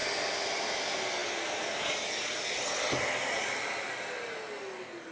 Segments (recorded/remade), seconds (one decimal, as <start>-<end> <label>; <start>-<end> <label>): 0.0-5.1 recorded